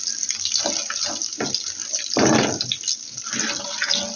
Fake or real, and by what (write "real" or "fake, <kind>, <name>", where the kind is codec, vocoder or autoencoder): real